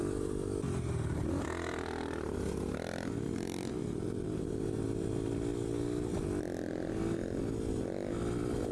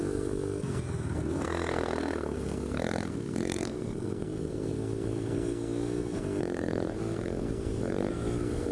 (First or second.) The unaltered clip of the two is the first